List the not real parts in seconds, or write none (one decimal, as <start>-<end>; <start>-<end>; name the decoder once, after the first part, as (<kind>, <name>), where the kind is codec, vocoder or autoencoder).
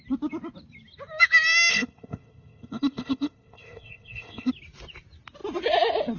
1.7-4.5 (codec, ZipCodec)